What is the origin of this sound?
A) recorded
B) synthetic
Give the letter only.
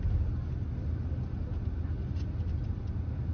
A